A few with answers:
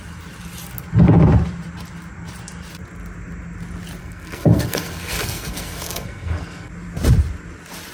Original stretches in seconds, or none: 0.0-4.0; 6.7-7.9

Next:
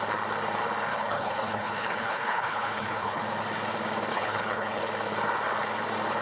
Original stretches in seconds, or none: 0.0-0.9; 3.2-4.1; 4.8-6.2

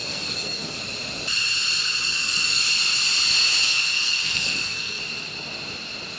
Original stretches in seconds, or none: 0.8-2.0; 2.6-3.6; 5.0-6.2

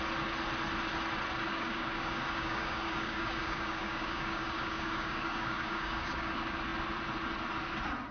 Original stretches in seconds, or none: 0.0-1.5; 6.3-8.1

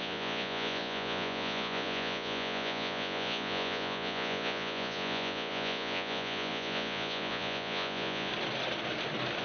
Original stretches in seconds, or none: 8.3-9.4